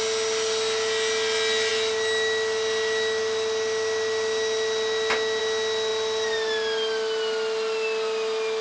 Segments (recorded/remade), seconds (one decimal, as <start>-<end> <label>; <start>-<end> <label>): 0.0-8.6 recorded